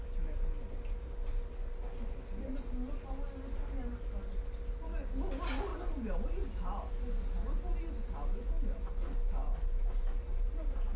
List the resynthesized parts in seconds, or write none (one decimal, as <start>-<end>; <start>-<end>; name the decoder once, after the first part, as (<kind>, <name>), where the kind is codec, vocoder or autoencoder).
none